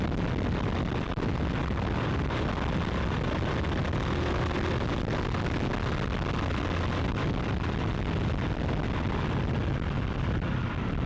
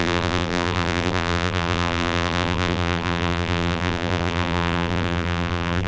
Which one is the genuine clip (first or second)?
first